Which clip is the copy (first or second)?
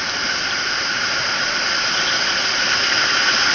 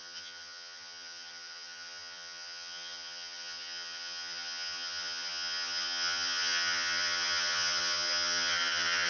second